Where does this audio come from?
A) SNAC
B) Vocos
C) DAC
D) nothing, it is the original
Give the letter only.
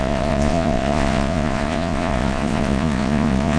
B